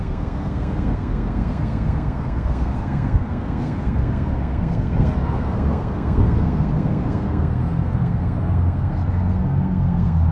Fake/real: fake